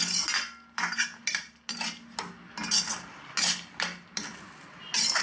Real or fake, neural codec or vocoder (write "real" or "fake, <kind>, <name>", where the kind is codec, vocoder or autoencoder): real